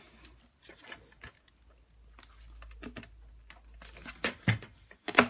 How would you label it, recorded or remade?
recorded